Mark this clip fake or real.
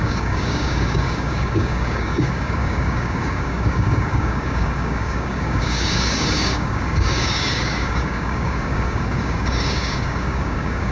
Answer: fake